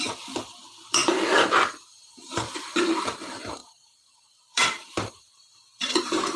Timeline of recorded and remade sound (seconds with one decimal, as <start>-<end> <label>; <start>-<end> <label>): 0.0-6.4 remade